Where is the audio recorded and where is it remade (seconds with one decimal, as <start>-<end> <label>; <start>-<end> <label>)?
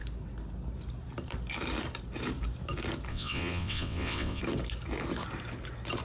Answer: 0.0-3.1 recorded; 3.1-4.4 remade; 4.4-6.0 recorded